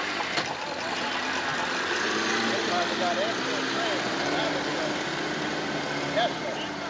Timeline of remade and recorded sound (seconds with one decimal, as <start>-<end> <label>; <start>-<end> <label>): 0.0-6.9 recorded